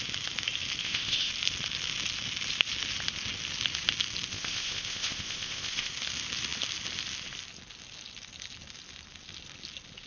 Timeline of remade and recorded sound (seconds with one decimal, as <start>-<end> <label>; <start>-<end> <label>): 0.0-0.8 recorded; 0.8-1.3 remade; 1.3-4.3 recorded; 4.3-5.9 remade; 5.9-10.1 recorded